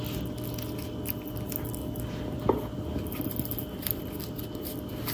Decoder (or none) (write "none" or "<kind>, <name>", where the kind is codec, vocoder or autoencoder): none